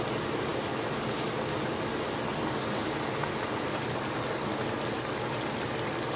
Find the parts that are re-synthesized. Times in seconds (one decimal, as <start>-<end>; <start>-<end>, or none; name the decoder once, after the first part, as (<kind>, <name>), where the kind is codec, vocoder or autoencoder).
none